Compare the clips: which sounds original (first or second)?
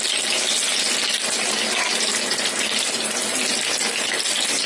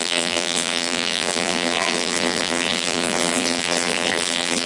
first